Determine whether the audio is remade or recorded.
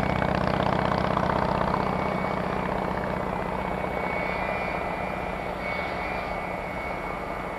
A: recorded